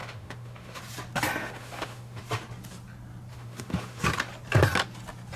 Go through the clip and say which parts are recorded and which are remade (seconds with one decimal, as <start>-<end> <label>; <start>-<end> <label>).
0.0-0.8 remade; 0.8-1.4 recorded; 1.4-2.2 remade; 2.2-3.3 recorded; 3.3-4.0 remade; 4.0-5.4 recorded